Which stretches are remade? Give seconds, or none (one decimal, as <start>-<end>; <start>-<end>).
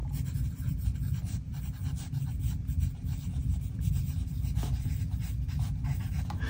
0.0-3.9